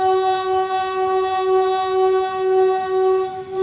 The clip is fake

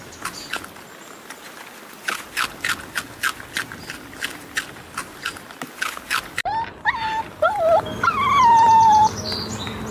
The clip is real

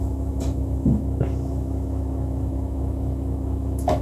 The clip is fake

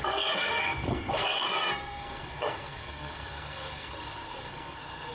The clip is fake